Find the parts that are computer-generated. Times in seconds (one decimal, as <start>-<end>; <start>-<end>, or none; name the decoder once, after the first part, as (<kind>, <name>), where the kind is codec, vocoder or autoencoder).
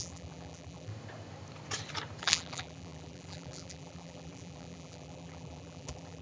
0.0-0.9 (vocoder, BigVGAN v2); 2.2-6.2